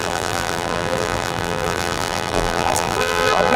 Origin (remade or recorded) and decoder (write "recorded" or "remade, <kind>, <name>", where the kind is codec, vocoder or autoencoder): remade, vocoder, BigVGAN v2